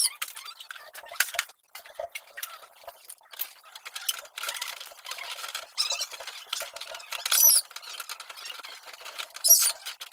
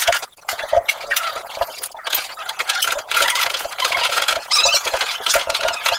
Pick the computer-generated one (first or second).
second